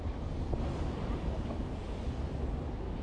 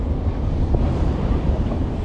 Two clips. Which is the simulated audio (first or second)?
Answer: second